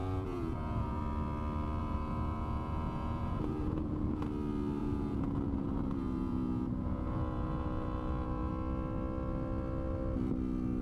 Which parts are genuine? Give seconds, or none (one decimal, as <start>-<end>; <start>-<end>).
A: 1.0-1.8; 4.2-4.8; 8.5-10.8